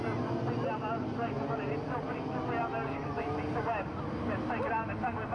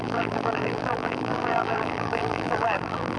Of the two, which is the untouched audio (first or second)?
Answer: first